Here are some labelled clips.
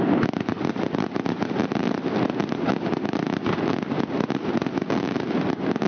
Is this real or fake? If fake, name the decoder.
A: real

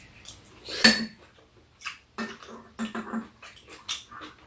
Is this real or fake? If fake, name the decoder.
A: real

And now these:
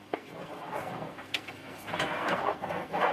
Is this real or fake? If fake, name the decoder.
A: fake, codec, SNAC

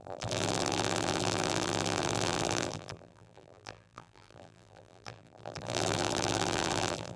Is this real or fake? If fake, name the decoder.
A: fake, vocoder, BigVGAN v2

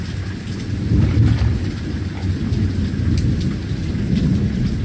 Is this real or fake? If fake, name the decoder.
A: real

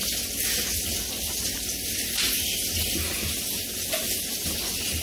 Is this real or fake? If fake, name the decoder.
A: real